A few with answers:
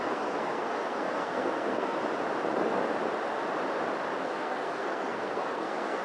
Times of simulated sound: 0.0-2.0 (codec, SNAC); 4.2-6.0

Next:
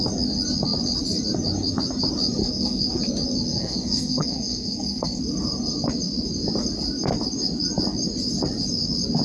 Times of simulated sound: 2.4-3.0 (codec, SNAC); 3.5-5.2